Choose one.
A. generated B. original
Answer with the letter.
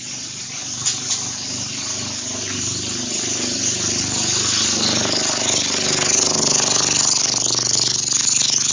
B